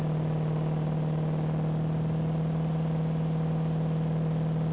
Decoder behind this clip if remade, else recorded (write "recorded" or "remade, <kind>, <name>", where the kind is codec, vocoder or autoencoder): recorded